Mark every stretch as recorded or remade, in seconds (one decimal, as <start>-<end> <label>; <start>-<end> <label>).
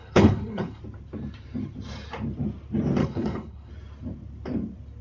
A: 0.0-0.8 remade; 0.8-3.0 recorded; 3.0-3.7 remade; 3.7-5.0 recorded